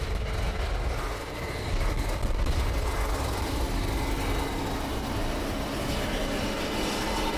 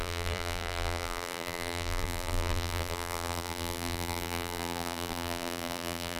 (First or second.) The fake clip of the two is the second